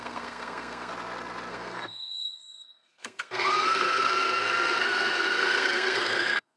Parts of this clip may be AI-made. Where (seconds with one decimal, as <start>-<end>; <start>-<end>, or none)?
0.0-0.9; 1.5-6.6